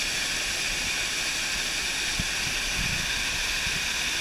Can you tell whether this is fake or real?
real